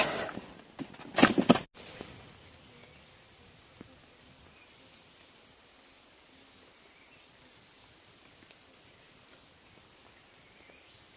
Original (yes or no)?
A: yes